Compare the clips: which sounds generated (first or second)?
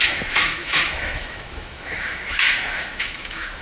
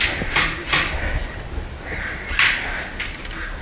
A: first